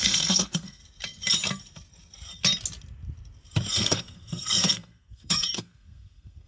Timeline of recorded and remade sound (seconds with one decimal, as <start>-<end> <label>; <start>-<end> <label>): 0.0-0.8 remade; 0.8-3.7 recorded; 3.7-6.5 remade